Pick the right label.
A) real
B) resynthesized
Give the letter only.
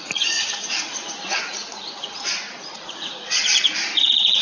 B